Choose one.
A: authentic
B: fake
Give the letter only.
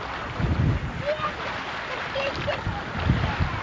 A